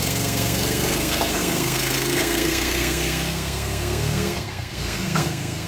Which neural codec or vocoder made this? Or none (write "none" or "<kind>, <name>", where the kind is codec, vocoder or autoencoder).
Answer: codec, SNAC